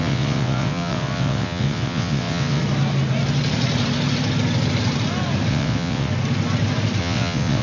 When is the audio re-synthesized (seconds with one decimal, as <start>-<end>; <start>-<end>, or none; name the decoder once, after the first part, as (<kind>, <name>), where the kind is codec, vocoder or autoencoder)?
0.0-2.6 (vocoder, WaveNeXt); 5.5-6.1; 7.0-7.6